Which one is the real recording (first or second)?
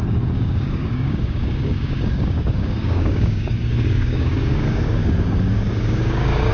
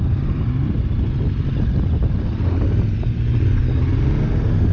second